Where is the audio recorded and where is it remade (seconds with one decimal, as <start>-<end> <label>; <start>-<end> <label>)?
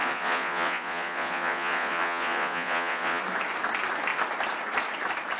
0.0-3.2 remade; 3.2-5.4 recorded